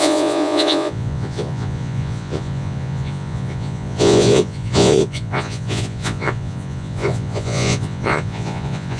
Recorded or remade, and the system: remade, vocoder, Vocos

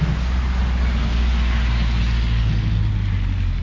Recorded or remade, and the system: recorded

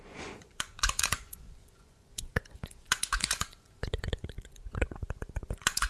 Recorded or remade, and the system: remade, vocoder, Vocos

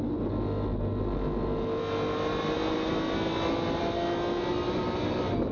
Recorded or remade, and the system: recorded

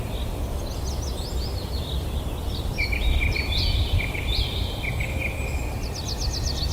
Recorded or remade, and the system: recorded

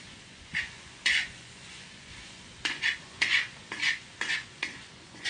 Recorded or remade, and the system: remade, vocoder, Vocos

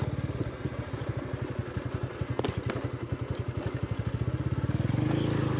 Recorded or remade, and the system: recorded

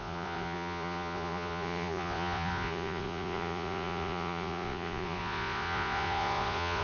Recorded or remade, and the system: remade, vocoder, Vocos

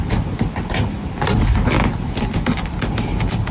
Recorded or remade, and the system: recorded